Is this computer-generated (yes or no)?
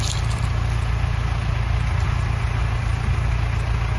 no